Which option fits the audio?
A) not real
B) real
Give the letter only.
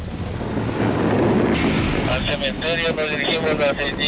B